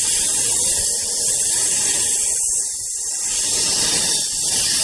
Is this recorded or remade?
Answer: recorded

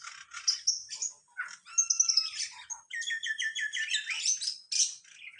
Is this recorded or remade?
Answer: recorded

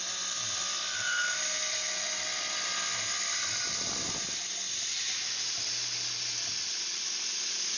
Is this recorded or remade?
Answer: recorded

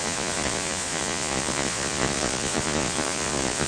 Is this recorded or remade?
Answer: remade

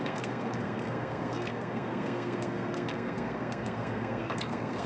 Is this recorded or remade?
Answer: remade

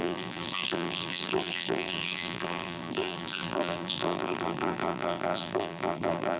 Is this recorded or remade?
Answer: remade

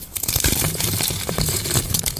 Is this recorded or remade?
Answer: remade